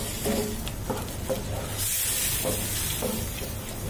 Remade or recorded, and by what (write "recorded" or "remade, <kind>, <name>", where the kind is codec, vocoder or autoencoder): recorded